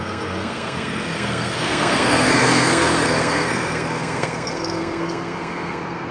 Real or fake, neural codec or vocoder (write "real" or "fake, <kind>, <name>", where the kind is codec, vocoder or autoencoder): fake, codec, SNAC